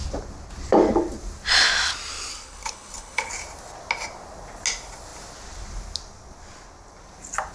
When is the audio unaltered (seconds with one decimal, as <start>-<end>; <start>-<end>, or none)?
0.0-2.3; 3.3-7.5